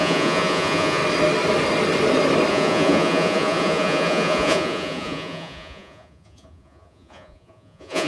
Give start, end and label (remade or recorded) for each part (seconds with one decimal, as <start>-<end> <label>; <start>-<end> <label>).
0.0-1.0 remade; 1.0-2.5 recorded; 2.5-8.1 remade